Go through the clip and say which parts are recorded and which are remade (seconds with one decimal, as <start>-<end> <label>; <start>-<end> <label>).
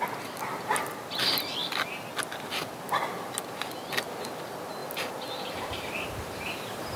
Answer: 0.0-7.0 recorded